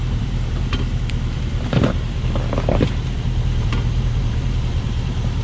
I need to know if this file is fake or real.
fake